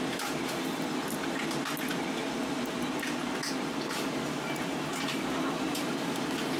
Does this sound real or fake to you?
real